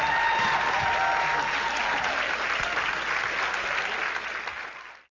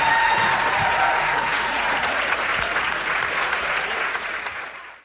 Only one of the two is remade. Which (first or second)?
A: second